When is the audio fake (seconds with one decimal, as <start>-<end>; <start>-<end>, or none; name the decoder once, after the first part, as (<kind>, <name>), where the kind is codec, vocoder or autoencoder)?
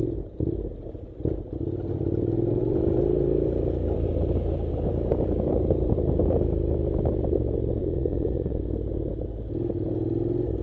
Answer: 7.8-8.6 (vocoder, Vocos)